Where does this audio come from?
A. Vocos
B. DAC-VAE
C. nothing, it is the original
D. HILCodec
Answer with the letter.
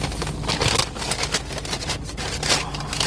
C